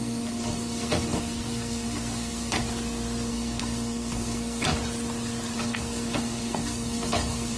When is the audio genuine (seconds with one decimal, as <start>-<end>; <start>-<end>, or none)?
2.6-3.3; 4.7-5.6